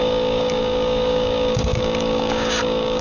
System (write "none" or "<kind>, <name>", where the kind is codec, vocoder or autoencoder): codec, DAC